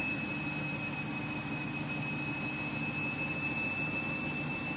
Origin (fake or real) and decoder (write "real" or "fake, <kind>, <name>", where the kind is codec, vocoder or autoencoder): real